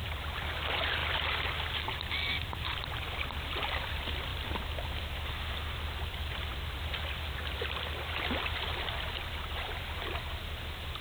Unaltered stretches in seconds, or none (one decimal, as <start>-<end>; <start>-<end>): 6.5-8.1